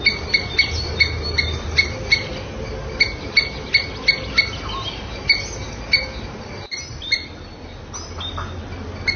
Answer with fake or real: real